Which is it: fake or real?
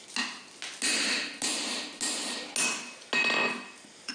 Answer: real